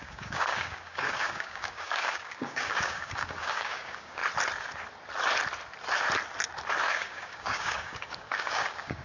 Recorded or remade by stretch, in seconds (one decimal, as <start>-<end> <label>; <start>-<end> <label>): 0.0-4.2 remade; 4.2-6.9 recorded; 6.9-9.0 remade